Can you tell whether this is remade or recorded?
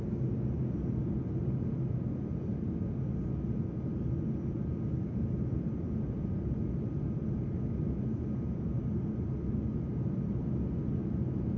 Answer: recorded